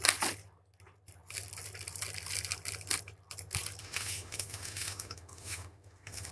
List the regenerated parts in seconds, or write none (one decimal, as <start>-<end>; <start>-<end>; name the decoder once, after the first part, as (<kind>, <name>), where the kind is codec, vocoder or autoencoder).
3.8-6.3 (autoencoder, DAC-VAE)